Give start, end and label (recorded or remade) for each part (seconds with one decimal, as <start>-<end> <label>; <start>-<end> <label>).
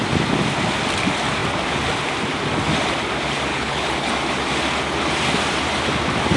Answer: 0.0-3.5 recorded; 3.5-4.1 remade; 4.1-6.4 recorded